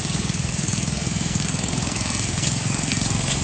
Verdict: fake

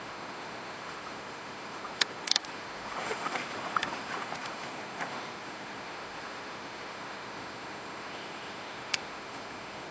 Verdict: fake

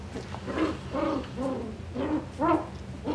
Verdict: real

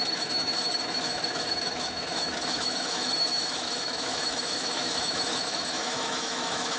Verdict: fake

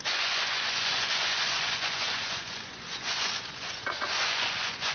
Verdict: fake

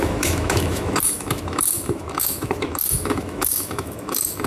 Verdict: fake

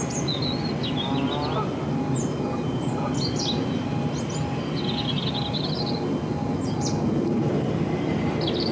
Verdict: real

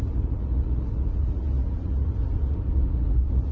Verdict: fake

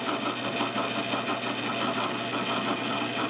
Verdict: real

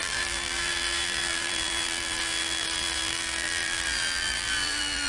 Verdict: fake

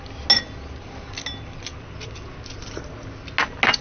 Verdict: real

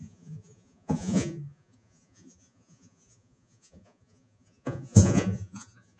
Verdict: fake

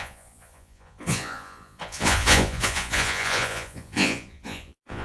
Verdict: fake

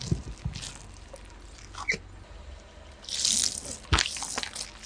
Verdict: real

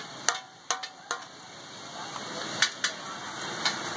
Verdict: real